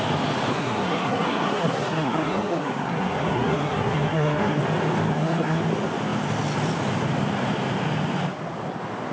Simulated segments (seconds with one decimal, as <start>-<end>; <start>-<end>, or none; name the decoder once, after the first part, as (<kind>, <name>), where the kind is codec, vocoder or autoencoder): 0.5-4.6 (codec, SNAC); 5.1-5.6